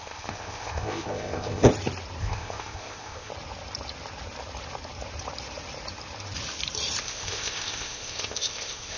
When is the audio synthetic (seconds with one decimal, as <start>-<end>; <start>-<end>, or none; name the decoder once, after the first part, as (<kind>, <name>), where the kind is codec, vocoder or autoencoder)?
0.0-1.7 (codec, ZipCodec); 2.2-3.3; 7.0-9.0